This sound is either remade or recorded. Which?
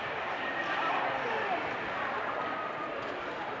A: recorded